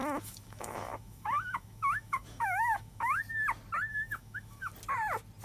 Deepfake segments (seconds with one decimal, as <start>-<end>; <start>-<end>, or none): 0.0-3.2; 3.9-4.7